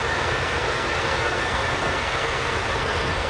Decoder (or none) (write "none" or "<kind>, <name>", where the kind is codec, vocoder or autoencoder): codec, SNAC